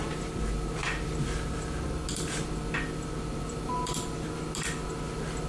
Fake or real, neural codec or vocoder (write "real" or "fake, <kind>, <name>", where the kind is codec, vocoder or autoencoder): real